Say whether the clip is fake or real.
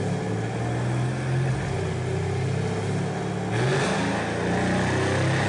real